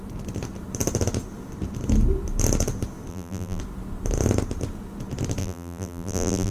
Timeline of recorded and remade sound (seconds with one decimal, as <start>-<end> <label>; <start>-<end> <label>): 0.0-3.1 recorded; 3.1-3.6 remade; 3.6-5.4 recorded; 5.4-6.5 remade